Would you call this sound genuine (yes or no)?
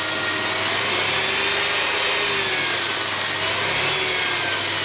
yes